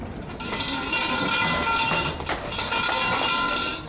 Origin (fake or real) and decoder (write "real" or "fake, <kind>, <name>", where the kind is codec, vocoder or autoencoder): real